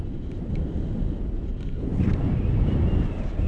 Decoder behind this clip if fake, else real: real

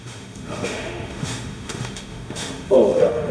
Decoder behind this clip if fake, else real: fake, autoencoder, DAC-VAE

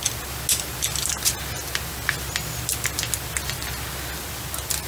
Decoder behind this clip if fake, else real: real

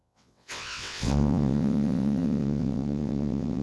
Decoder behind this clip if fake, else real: fake, vocoder, WaveNeXt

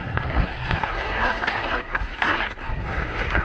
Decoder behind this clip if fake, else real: fake, codec, SNAC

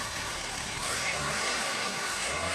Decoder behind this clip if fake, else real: fake, codec, SNAC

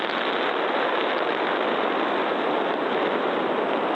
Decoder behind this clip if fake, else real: real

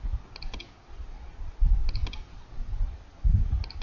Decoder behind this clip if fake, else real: real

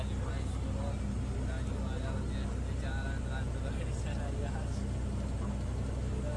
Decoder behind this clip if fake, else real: real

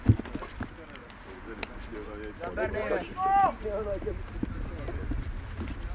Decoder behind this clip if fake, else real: real